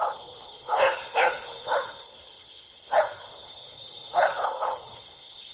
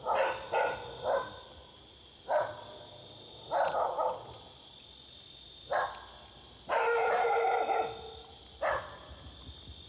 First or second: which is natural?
second